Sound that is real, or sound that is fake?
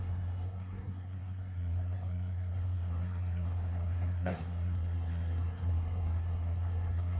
fake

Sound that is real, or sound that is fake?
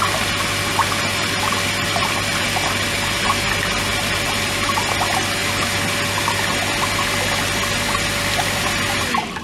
real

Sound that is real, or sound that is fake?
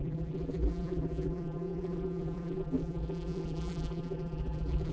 fake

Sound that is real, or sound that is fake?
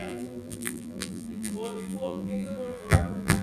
fake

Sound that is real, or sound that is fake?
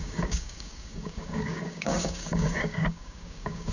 fake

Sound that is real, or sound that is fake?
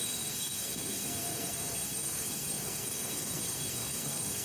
fake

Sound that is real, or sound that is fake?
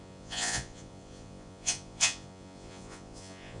fake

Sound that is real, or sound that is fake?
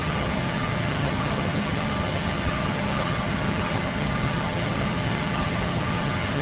fake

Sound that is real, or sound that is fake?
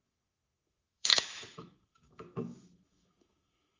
fake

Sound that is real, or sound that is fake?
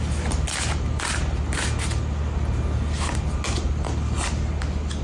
real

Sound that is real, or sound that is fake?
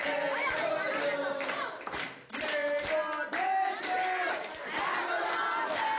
real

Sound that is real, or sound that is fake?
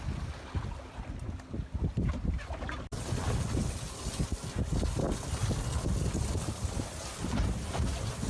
real